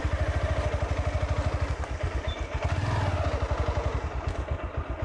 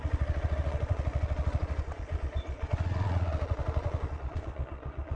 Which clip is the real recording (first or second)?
first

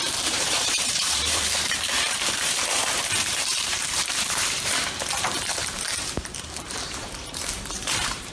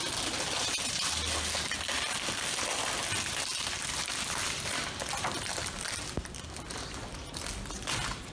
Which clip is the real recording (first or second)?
second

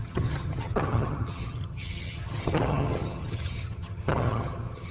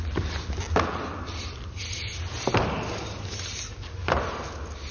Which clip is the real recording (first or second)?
second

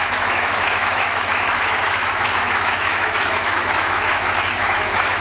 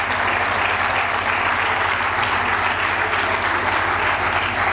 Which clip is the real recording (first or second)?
second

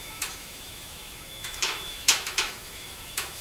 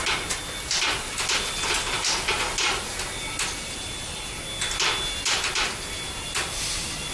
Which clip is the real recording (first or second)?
second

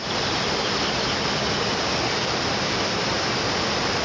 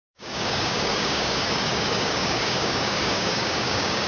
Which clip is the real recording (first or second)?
first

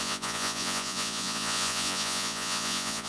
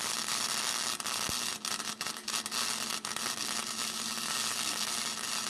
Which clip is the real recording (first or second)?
second